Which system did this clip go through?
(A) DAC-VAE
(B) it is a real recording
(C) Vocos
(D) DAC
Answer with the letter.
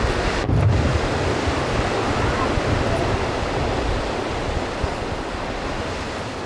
B